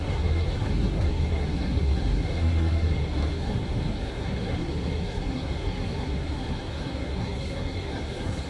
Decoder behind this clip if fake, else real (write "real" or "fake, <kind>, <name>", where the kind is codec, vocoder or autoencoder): fake, codec, SNAC